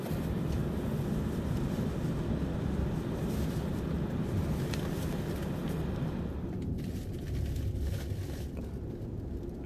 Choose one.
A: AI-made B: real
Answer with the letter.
B